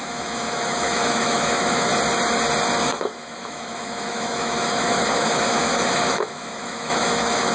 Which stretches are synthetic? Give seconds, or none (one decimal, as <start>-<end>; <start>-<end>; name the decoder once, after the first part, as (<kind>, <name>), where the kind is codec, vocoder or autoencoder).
0.0-1.9 (autoencoder, DAC-VAE); 2.8-7.5